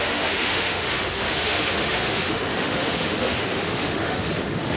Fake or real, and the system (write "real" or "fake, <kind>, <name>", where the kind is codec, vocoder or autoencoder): fake, autoencoder, DAC-VAE